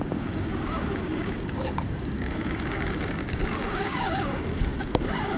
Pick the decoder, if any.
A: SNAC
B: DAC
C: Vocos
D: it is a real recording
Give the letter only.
B